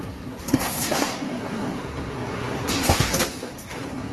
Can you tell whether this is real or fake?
fake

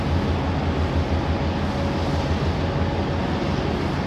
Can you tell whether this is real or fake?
real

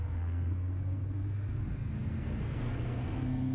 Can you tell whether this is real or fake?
fake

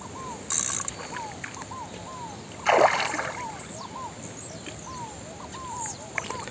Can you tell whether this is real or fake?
real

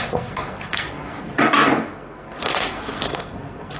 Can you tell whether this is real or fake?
fake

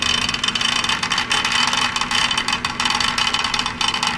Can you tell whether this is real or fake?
real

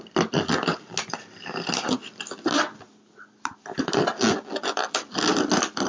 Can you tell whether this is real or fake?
real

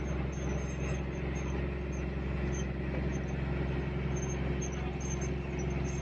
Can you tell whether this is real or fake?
real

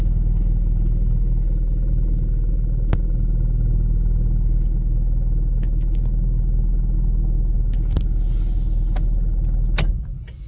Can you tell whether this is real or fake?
real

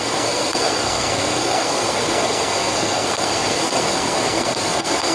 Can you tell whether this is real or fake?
fake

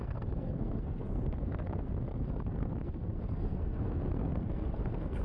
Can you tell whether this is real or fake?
fake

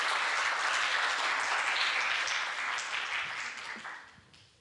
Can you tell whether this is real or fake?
real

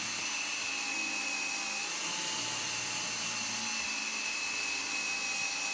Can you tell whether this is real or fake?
real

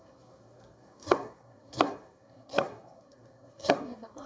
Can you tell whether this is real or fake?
fake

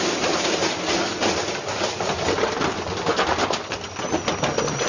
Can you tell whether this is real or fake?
real